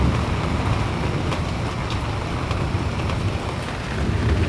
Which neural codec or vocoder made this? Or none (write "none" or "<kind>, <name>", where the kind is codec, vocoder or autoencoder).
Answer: none